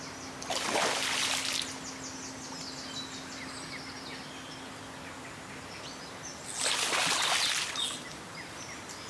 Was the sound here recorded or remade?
recorded